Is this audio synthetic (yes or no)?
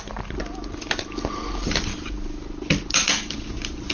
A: no